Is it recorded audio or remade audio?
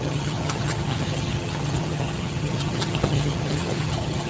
remade